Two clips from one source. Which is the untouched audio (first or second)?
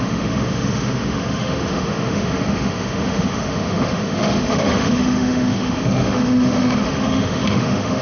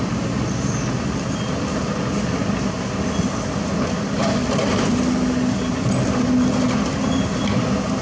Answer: second